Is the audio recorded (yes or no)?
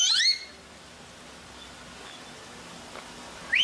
yes